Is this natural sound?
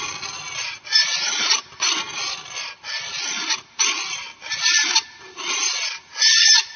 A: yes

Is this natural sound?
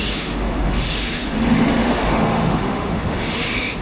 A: no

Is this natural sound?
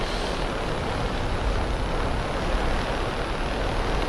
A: yes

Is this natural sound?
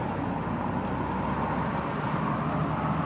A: yes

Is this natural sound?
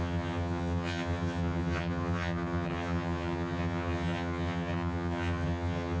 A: no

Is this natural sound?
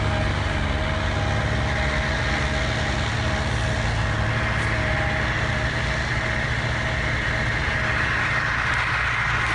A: yes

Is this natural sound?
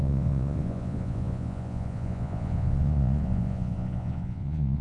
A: no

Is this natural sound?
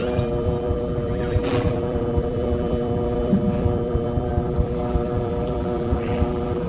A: no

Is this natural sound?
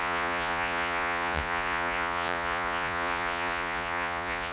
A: no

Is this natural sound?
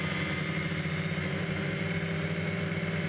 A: no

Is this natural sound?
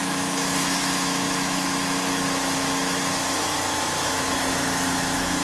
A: no